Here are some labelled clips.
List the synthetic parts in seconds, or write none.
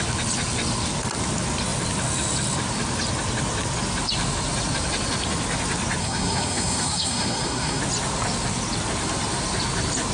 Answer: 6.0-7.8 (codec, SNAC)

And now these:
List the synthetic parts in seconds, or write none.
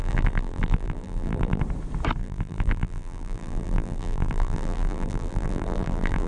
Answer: 0.0-1.6 (vocoder, BigVGAN v2); 2.2-6.3